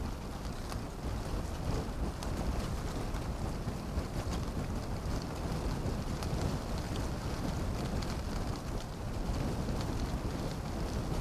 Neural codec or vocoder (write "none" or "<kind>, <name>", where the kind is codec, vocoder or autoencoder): none